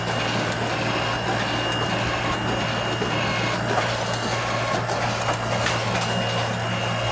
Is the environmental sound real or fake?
real